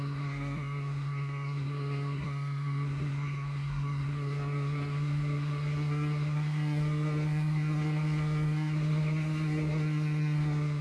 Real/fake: fake